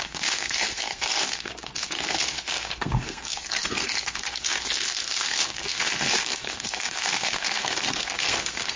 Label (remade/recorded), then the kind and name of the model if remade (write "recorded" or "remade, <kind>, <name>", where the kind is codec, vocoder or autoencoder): remade, codec, SNAC